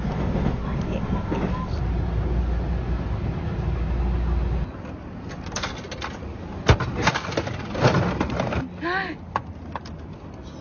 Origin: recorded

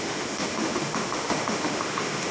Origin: remade